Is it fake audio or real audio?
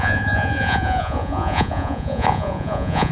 fake